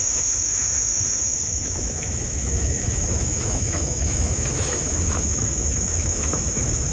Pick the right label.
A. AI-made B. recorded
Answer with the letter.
A